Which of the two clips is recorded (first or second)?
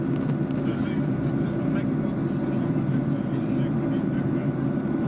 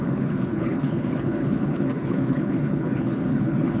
first